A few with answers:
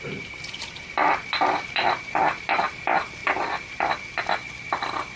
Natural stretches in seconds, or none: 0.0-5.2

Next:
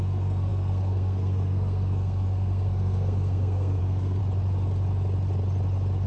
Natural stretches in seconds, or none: 4.2-6.1

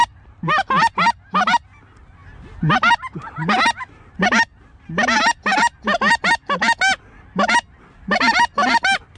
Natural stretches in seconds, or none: 0.0-9.2

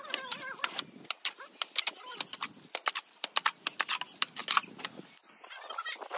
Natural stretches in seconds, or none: 0.0-6.2

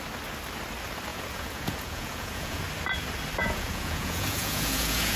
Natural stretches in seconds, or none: 0.0-1.1; 2.6-3.4

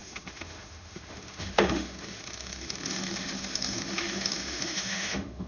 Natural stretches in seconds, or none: none

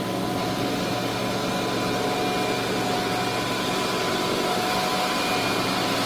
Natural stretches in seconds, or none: 0.0-6.1

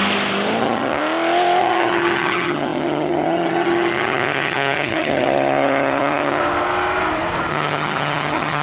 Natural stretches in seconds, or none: 0.0-0.6; 1.0-1.6; 6.4-7.5